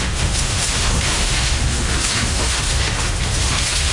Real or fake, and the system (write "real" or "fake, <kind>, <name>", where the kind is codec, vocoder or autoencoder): fake, autoencoder, DAC-VAE